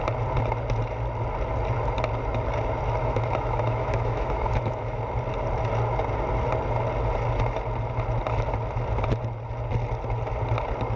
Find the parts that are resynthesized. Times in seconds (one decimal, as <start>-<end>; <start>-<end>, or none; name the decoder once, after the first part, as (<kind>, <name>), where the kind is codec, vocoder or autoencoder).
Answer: 3.0-5.0 (autoencoder, DAC-VAE)